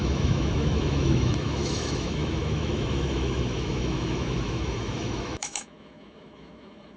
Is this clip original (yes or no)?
no